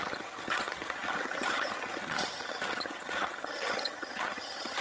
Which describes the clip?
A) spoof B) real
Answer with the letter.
A